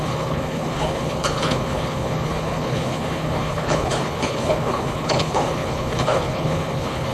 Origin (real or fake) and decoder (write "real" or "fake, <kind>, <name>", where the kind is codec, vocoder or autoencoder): fake, codec, HILCodec